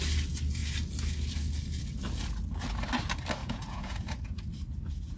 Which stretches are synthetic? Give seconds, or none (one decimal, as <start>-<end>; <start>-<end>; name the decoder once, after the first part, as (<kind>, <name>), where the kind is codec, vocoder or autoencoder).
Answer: 3.4-4.4 (vocoder, Vocos)